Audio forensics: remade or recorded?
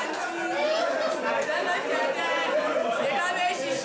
recorded